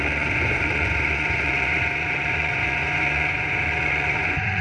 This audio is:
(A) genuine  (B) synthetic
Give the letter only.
B